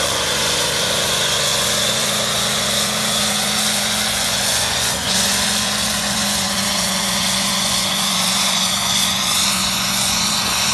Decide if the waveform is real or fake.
fake